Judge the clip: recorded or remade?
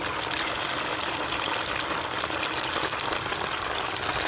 recorded